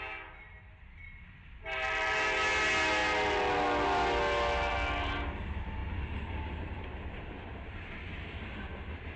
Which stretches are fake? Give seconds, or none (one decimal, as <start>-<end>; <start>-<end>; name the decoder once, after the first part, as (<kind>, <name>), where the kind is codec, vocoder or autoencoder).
none